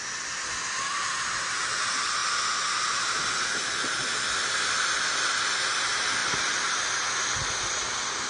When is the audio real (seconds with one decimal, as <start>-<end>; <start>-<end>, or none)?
0.0-8.3